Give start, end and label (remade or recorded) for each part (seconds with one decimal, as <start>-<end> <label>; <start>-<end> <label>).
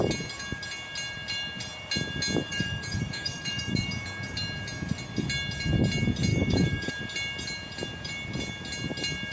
0.0-2.5 recorded; 2.5-3.9 remade; 3.9-6.3 recorded; 6.3-6.9 remade; 6.9-9.3 recorded